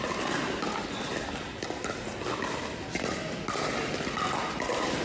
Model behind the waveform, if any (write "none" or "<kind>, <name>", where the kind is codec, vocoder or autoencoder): none